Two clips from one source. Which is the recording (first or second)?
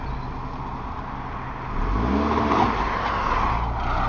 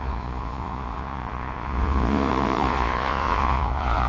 first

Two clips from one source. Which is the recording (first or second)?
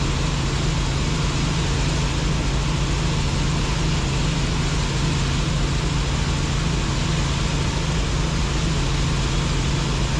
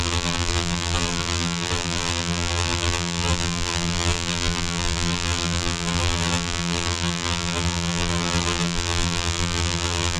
first